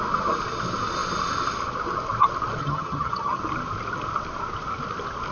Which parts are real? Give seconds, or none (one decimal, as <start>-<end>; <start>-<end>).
0.0-2.6; 3.4-5.3